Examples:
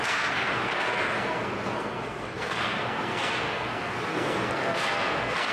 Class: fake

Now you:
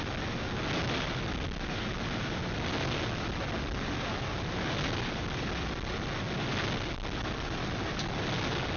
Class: real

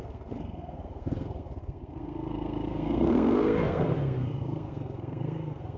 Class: fake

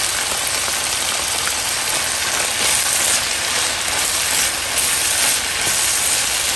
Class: real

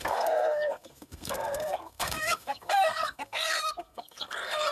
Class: fake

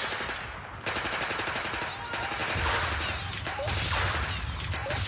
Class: real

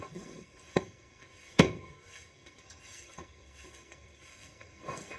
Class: fake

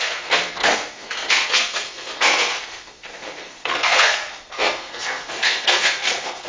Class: fake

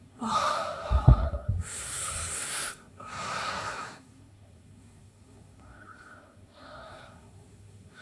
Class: fake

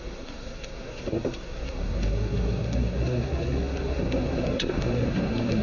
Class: fake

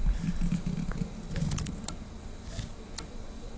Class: real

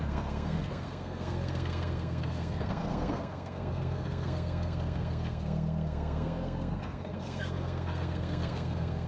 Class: fake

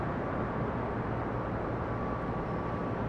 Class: real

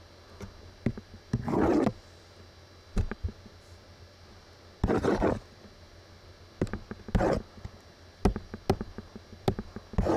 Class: real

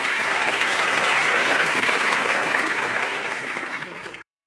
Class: fake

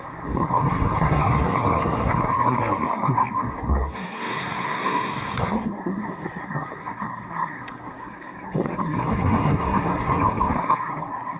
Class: fake